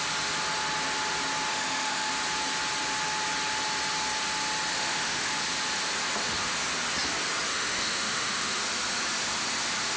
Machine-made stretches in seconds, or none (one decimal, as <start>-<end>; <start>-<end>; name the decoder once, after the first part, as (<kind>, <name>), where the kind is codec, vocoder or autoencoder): 1.5-2.1 (autoencoder, DAC-VAE); 4.7-5.3; 7.5-8.6